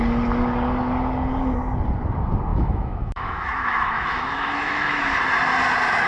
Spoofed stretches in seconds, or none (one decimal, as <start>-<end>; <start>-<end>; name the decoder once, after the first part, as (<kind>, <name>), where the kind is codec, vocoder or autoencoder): 2.5-5.2 (autoencoder, DAC-VAE)